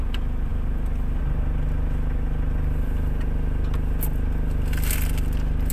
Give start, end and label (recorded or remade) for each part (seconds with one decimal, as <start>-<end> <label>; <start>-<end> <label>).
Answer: 0.0-5.7 recorded